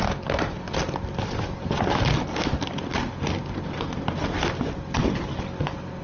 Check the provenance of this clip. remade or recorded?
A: recorded